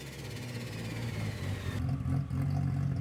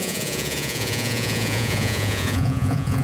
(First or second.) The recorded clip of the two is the first